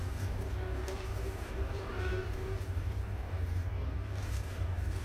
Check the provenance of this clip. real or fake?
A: fake